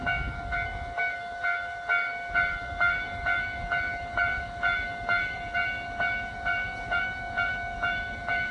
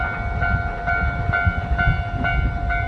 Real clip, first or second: second